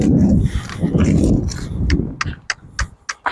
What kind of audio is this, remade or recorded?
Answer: recorded